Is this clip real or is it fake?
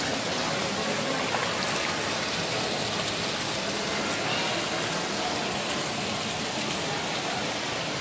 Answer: real